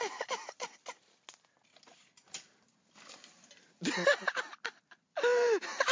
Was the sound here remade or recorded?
recorded